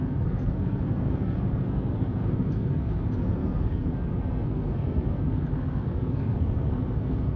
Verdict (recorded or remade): remade